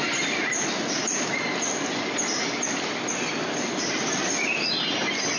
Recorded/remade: recorded